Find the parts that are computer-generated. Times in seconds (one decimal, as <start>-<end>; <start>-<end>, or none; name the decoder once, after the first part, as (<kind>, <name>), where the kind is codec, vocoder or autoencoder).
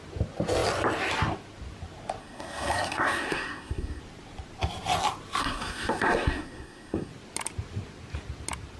2.2-4.0 (codec, SNAC); 5.4-7.1